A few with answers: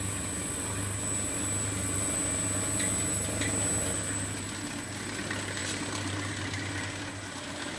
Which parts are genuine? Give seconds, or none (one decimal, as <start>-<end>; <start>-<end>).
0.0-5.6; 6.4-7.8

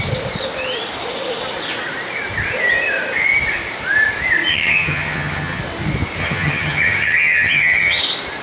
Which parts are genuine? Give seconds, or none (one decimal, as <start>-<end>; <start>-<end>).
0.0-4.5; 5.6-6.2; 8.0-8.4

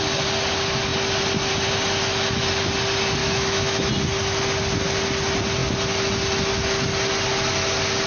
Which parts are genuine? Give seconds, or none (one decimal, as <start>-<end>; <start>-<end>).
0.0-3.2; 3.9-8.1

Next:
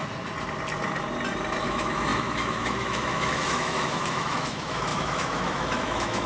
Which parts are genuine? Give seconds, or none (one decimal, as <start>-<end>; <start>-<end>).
0.0-1.6

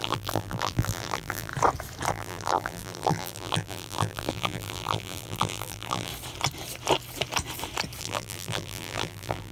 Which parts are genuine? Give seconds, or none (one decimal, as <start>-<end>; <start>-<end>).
1.5-2.1; 6.1-8.0

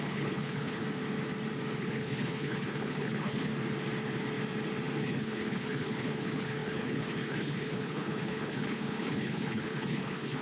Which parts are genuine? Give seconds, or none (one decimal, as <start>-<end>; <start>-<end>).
0.8-1.8; 3.5-5.0